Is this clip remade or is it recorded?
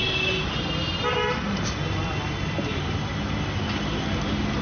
recorded